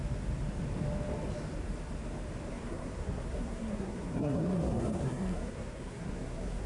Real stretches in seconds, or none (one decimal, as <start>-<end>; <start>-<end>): 0.0-2.5